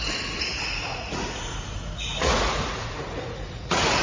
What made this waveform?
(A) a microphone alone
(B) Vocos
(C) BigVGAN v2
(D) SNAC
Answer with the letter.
B